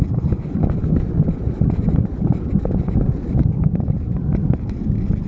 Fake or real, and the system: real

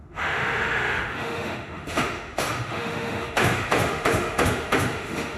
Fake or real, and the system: fake, autoencoder, DAC-VAE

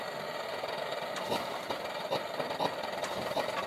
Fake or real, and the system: real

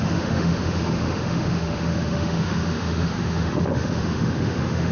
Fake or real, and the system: fake, autoencoder, DAC-VAE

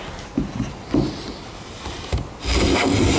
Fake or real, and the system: real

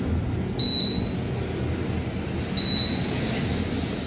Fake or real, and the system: real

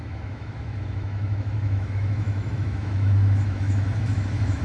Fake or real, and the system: fake, autoencoder, DAC-VAE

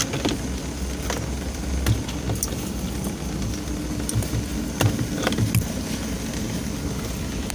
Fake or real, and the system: real